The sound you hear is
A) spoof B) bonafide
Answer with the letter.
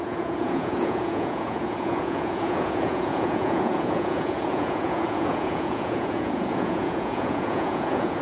A